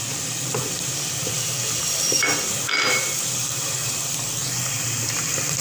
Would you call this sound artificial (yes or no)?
yes